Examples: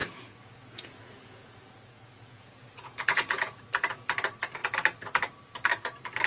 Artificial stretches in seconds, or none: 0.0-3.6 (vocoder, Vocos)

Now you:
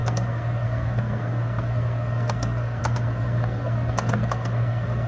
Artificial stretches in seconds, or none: 0.0-5.1 (codec, SNAC)

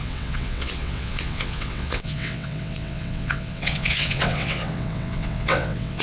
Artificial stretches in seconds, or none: 0.0-6.0 (vocoder, WaveNeXt)

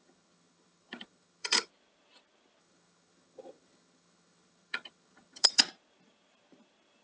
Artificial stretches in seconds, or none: 0.0-1.7 (vocoder, HiFi-GAN); 2.6-5.6

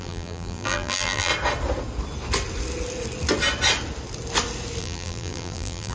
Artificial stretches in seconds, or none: 0.0-1.3 (vocoder, BigVGAN v2); 4.8-5.9